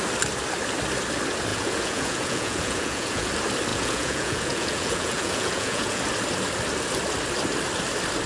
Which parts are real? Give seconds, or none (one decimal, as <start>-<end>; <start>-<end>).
0.0-1.5; 3.3-3.7; 6.0-8.3

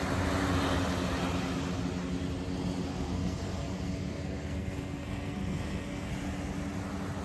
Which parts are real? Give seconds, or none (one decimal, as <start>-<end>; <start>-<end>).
0.0-2.9; 6.1-7.2

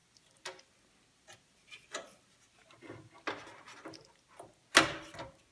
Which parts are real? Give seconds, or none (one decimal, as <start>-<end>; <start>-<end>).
0.0-5.5